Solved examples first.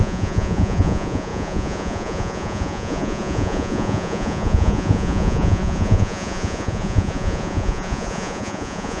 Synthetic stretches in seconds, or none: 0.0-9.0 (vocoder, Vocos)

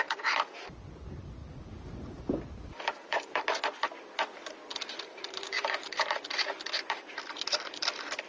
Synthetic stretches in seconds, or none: 1.4-3.4 (vocoder, BigVGAN v2); 5.1-6.2

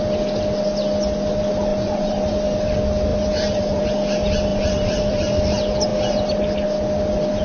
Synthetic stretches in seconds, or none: 1.7-2.3 (vocoder, BigVGAN v2); 3.1-3.9; 4.5-5.4

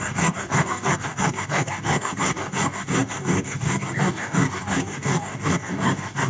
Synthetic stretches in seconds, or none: 0.0-6.3 (codec, DAC)

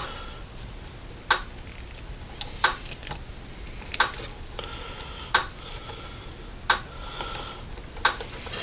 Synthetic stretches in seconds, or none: none

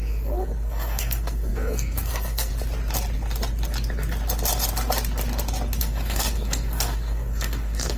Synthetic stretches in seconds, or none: 0.0-2.5 (codec, SNAC); 5.8-8.0